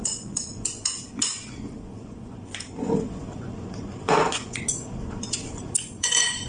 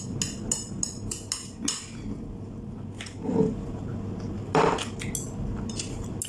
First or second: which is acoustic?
second